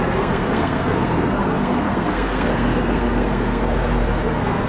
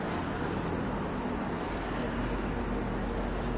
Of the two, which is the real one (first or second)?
second